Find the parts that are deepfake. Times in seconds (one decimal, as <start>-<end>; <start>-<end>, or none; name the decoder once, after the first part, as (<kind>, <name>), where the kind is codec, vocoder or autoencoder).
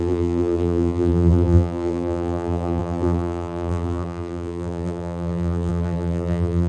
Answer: 0.0-6.7 (vocoder, BigVGAN v2)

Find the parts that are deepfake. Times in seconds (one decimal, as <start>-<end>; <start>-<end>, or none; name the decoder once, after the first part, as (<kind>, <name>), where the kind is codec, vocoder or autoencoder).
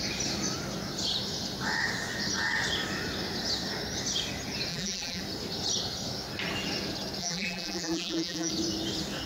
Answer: 4.7-5.2 (vocoder, BigVGAN v2); 7.2-8.5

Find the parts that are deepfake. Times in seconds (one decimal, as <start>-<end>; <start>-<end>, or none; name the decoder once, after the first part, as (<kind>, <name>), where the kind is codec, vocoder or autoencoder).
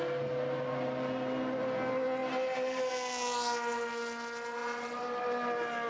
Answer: 2.2-2.9 (vocoder, BigVGAN v2)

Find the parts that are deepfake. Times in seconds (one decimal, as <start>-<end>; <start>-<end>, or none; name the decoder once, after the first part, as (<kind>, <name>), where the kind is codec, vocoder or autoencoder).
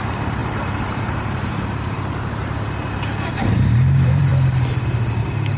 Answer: 0.0-2.4 (vocoder, BigVGAN v2); 3.3-4.3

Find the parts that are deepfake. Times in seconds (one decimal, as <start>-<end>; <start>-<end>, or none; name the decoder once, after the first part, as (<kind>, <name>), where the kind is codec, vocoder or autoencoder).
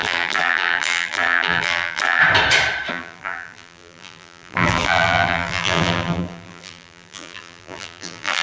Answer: 0.0-2.2 (vocoder, BigVGAN v2); 2.9-8.4